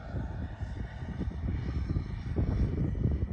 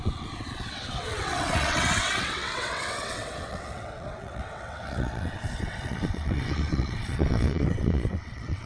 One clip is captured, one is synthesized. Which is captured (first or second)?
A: first